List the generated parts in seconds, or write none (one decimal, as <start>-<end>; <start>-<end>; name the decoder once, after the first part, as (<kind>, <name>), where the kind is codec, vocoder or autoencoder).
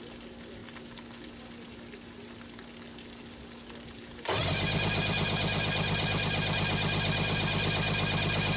none